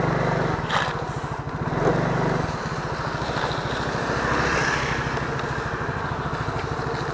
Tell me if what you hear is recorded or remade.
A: recorded